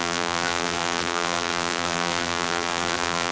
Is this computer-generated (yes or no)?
yes